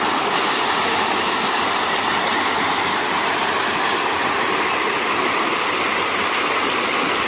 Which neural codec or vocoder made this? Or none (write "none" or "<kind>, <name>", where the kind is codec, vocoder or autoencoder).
none